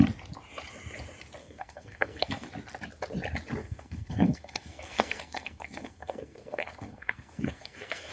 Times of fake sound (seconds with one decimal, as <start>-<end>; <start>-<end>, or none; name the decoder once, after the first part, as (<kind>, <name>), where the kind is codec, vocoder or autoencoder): 1.4-2.5 (codec, SNAC); 3.6-8.1